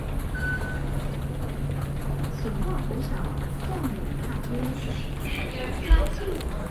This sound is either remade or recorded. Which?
recorded